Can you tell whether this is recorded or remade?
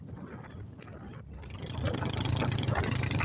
recorded